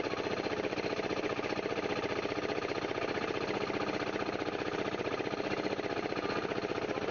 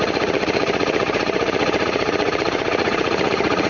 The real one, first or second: first